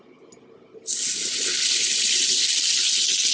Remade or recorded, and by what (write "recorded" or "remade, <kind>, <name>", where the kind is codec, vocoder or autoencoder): recorded